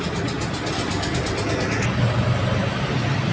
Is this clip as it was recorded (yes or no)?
yes